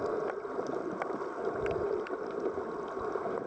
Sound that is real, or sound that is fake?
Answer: real